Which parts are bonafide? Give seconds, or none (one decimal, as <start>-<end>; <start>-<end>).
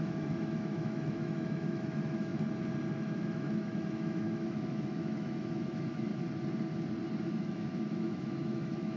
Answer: 2.3-2.9; 6.1-7.2